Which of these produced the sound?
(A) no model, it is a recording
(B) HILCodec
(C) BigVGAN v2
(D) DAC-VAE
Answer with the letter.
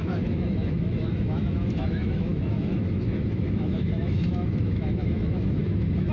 D